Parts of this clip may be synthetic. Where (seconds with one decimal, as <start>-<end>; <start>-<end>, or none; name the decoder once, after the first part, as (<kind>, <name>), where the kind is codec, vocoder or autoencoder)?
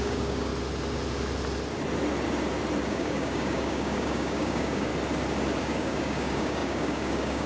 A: 0.0-0.5 (codec, DAC); 2.9-4.9; 5.6-7.5